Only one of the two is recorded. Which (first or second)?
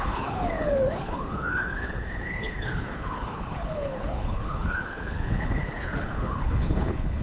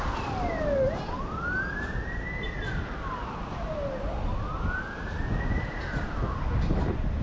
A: second